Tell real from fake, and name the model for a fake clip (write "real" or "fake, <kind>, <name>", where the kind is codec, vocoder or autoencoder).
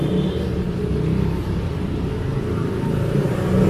real